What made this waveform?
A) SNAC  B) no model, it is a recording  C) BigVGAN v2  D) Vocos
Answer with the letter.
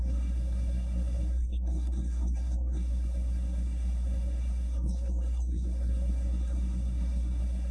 A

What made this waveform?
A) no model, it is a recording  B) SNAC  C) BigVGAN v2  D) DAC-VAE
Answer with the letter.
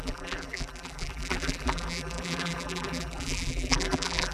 C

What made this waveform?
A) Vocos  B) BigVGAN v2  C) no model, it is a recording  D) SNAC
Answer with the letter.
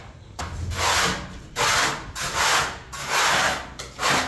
C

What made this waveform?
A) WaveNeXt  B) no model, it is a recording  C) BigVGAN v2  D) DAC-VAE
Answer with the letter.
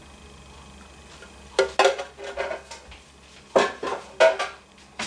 B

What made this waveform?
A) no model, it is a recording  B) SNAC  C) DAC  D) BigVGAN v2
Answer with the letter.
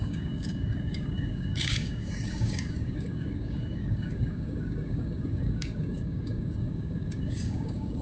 C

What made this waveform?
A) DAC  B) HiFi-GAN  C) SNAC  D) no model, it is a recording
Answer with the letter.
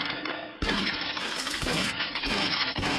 C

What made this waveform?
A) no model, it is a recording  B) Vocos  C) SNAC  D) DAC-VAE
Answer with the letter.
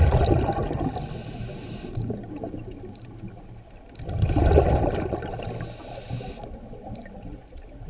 A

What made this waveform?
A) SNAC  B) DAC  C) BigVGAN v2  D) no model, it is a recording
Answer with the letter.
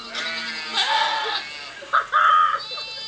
D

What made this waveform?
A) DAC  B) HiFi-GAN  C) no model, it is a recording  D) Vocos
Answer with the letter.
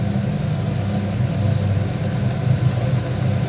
C